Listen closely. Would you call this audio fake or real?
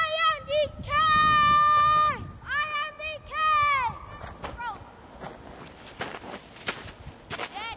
real